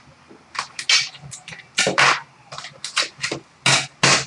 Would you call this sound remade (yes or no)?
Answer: no